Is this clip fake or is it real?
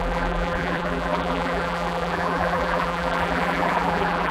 fake